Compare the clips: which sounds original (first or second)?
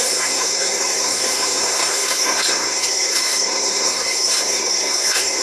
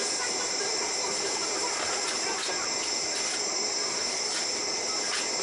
second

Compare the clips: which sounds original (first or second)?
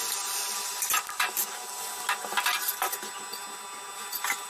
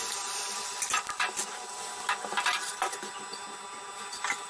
first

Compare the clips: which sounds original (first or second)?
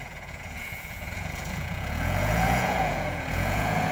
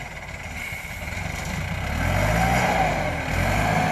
second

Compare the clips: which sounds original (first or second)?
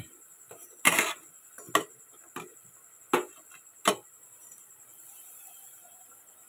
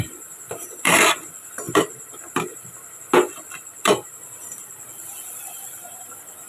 first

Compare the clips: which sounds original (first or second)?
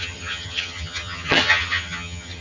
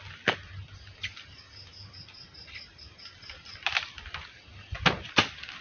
second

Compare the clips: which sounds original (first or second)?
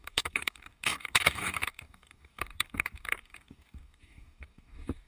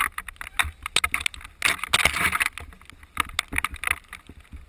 second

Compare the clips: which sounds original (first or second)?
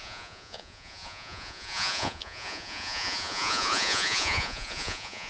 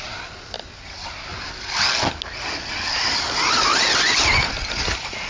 second